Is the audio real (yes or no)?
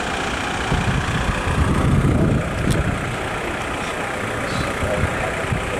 yes